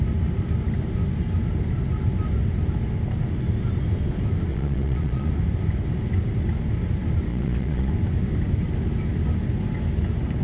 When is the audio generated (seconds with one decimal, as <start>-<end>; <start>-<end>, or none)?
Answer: 4.5-5.3; 7.3-7.9